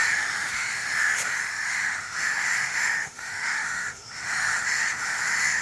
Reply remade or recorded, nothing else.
remade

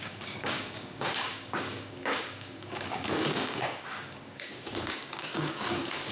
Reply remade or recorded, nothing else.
remade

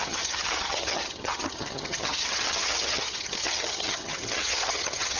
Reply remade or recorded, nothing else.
remade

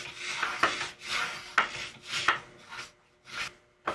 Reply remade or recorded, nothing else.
recorded